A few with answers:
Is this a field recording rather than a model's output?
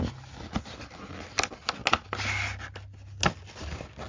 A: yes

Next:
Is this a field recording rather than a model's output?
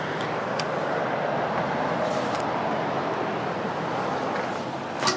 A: yes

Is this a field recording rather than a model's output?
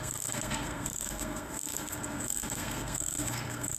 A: no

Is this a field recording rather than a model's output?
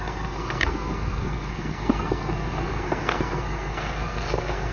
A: no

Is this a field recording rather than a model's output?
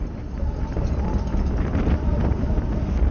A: yes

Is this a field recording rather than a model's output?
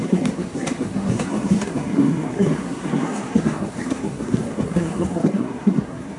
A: no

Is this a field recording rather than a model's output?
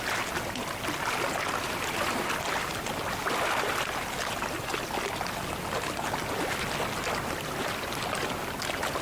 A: yes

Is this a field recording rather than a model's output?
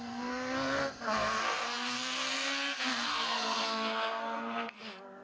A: no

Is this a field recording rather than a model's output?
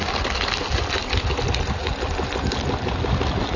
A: yes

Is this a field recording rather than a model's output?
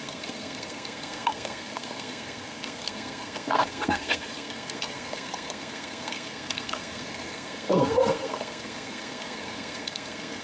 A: no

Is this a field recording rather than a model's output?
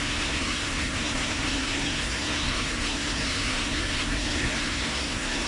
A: no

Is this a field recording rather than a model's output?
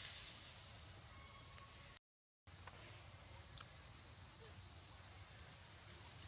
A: yes